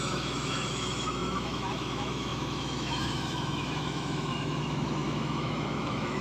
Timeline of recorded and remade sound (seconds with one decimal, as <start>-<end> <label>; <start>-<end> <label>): 0.0-6.2 remade